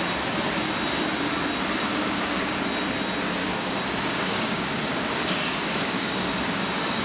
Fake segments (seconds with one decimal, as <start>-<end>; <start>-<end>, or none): 1.9-2.5; 3.4-7.0